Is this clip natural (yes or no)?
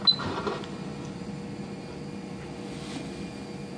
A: yes